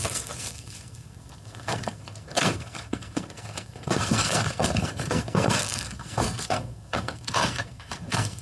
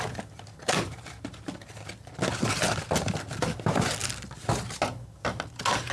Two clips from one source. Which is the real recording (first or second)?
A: second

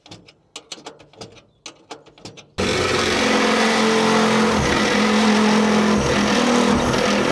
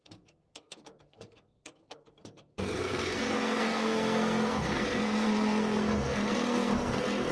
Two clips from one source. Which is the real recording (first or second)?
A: first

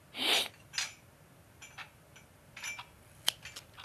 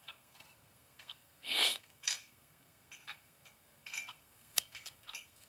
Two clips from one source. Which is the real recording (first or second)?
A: first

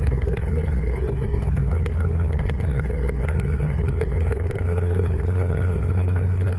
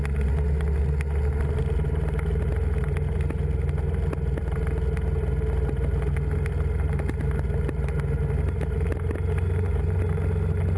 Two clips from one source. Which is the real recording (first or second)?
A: second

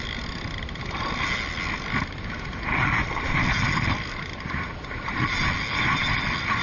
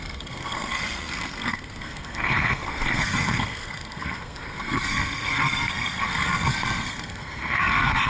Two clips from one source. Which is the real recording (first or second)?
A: first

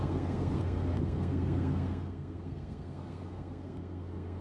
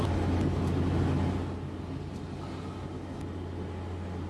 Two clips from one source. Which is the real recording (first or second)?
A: second